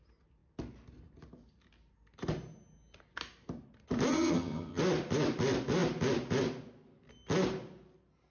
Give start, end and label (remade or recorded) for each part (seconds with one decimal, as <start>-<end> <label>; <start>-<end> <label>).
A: 0.0-4.1 recorded; 4.1-4.8 remade; 4.8-8.3 recorded